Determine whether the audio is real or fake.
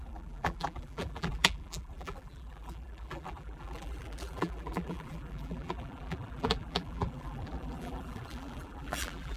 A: fake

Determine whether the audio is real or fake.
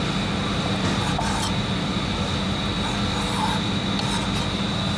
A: real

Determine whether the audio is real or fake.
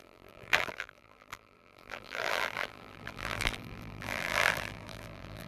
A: fake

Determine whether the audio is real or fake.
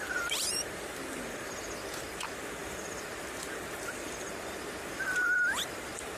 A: fake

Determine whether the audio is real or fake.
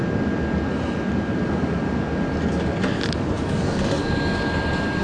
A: real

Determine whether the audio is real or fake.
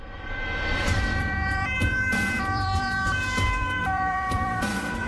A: fake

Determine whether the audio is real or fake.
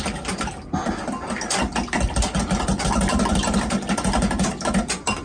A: real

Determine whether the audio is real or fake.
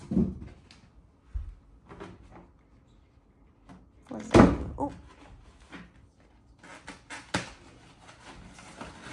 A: real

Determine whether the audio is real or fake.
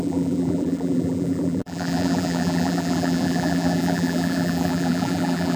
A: fake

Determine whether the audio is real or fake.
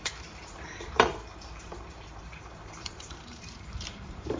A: fake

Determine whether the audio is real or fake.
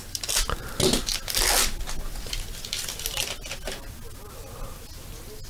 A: real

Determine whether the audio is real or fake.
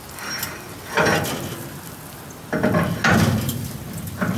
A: real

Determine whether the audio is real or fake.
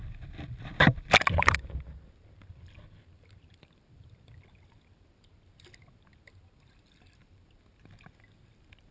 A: fake